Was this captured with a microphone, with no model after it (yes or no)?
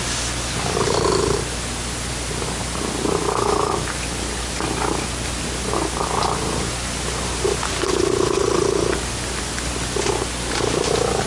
yes